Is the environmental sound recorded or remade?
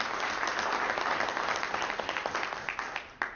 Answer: recorded